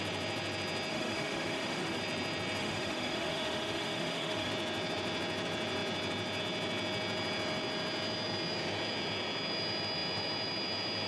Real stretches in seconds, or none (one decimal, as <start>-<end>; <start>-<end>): 0.0-0.9; 2.0-2.6; 4.5-11.1